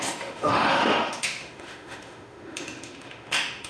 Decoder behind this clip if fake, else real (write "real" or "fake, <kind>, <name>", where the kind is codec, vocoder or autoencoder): fake, autoencoder, DAC-VAE